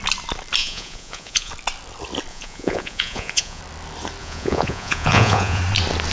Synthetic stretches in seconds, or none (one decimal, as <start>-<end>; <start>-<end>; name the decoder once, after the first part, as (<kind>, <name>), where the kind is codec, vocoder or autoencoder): 0.6-1.5 (vocoder, Vocos); 2.3-3.6; 4.2-5.6